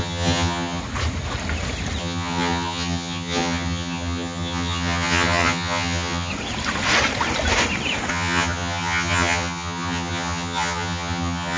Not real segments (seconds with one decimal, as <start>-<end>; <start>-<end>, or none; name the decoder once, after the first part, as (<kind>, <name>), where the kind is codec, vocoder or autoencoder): 0.0-0.8 (vocoder, HiFi-GAN); 2.0-6.3; 8.1-11.6